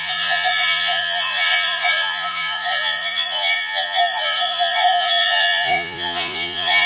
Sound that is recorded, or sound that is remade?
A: remade